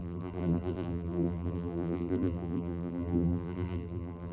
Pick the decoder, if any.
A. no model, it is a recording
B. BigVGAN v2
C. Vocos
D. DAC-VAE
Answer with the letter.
B